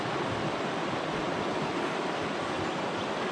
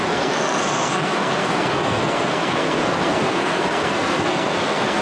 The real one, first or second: first